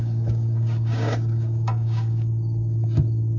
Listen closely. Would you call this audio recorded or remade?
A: remade